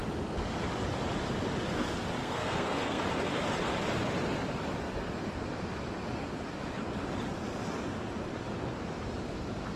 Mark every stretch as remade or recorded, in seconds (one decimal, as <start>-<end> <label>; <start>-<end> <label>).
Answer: 0.0-2.2 recorded; 2.2-3.0 remade; 3.0-9.8 recorded